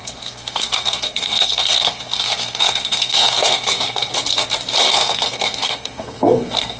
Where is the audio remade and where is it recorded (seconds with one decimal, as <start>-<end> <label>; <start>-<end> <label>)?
0.0-4.1 remade; 4.1-4.9 recorded; 4.9-6.8 remade